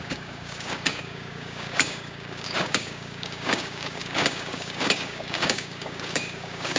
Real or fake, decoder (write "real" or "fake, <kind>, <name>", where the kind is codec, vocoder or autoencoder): fake, codec, DAC